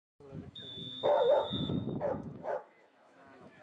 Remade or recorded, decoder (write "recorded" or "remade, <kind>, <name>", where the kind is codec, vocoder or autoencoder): remade, autoencoder, DAC-VAE